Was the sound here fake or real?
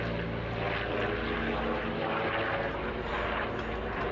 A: real